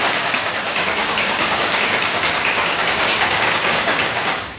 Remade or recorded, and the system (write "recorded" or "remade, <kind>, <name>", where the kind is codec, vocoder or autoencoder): remade, codec, DAC